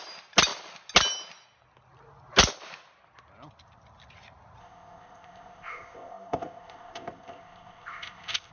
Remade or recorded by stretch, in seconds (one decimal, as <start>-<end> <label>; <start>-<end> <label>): 0.0-4.6 recorded; 4.6-8.5 remade